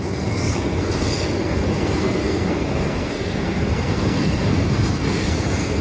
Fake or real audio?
fake